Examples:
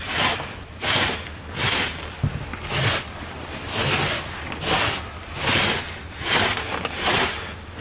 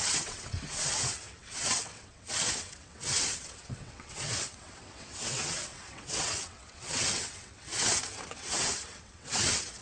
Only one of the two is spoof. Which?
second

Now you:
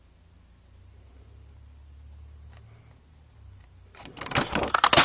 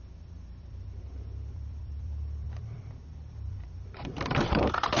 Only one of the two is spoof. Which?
second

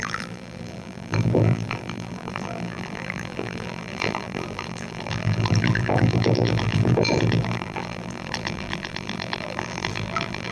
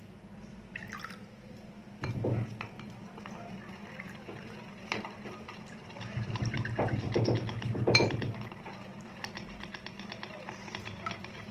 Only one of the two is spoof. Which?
first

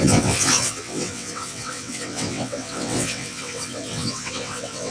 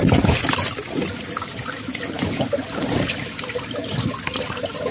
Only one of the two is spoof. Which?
first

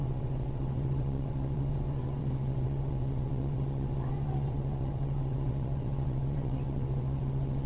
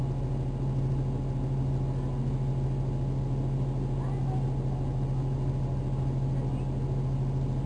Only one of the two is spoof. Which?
first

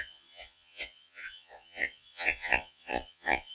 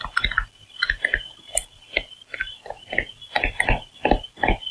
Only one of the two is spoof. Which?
first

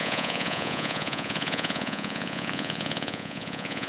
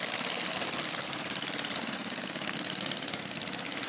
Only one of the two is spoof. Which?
first